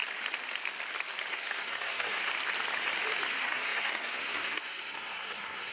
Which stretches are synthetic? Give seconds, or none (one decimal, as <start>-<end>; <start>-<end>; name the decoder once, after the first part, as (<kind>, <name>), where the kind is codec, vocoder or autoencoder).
1.3-2.3 (codec, SNAC); 3.3-5.7

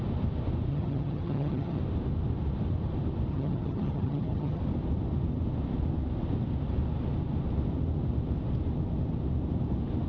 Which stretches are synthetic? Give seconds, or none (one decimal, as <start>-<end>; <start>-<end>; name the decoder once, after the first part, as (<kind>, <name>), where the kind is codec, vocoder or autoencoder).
0.7-1.8 (vocoder, HiFi-GAN); 3.3-4.6

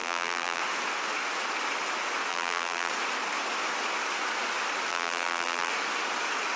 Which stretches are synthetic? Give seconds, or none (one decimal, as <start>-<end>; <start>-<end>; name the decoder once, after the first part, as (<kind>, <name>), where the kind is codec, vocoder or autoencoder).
0.0-0.6 (vocoder, BigVGAN v2); 2.3-2.9; 4.9-5.7

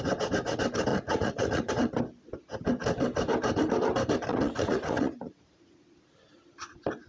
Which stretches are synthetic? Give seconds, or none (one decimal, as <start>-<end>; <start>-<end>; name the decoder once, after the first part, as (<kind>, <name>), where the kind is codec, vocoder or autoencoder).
0.9-1.7 (vocoder, Vocos); 4.3-5.8

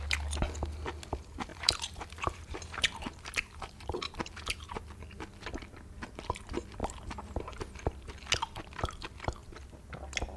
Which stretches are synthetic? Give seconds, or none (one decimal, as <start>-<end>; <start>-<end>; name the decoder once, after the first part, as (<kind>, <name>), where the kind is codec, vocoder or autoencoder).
1.5-4.8 (vocoder, BigVGAN v2); 6.8-8.1

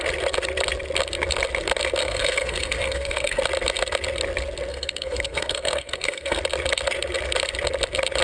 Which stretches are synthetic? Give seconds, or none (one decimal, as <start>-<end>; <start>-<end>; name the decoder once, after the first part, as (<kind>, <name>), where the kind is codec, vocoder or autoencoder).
2.0-3.4 (codec, SNAC); 4.7-6.4

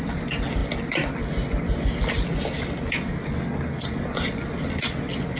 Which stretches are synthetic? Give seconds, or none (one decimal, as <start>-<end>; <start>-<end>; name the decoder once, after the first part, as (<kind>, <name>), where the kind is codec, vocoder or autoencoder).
none

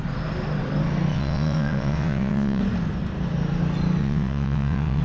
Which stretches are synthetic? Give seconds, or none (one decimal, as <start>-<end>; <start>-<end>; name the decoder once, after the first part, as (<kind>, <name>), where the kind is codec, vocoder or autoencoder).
1.1-2.6 (vocoder, WaveNeXt); 4.0-5.0